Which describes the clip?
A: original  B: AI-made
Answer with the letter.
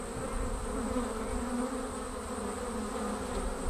A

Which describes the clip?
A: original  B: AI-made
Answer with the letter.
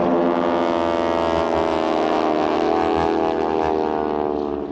A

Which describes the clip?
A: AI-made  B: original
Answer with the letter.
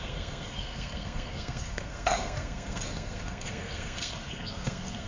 A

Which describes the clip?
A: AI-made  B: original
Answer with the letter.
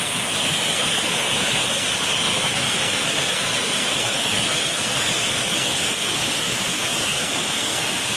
A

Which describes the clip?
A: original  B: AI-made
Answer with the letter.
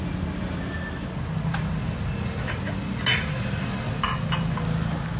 A